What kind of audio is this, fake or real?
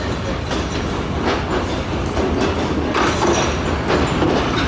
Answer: real